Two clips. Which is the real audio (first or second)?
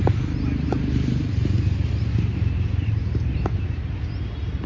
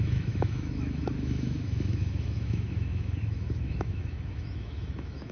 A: first